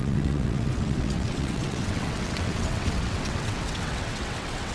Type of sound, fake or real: fake